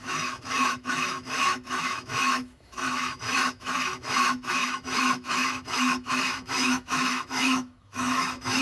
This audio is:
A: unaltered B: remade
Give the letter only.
B